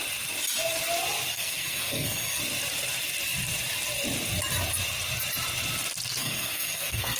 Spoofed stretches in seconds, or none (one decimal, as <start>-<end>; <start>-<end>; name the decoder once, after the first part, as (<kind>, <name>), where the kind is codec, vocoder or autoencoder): 1.3-2.4 (codec, SNAC); 6.2-7.2